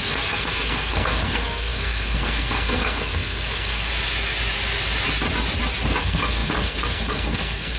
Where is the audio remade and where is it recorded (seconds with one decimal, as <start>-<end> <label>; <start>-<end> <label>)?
0.0-3.9 remade; 3.9-6.0 recorded; 6.0-7.8 remade